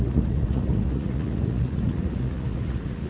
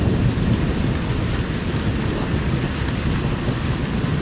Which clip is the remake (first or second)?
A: first